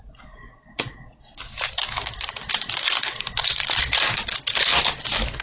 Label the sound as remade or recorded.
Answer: recorded